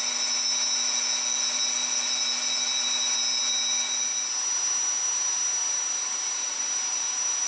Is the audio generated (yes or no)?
no